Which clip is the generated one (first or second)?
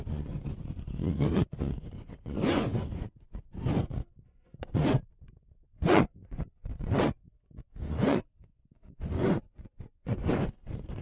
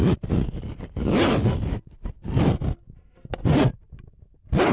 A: first